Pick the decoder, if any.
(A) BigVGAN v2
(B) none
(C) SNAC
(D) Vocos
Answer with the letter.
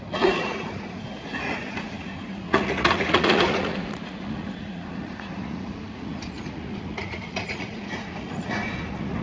D